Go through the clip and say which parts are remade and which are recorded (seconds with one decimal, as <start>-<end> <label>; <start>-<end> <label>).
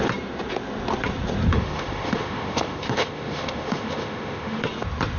0.0-1.5 recorded; 1.5-4.6 remade; 4.6-5.2 recorded